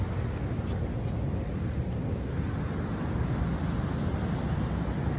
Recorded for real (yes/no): yes